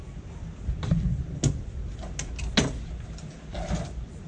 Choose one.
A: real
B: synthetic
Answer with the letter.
A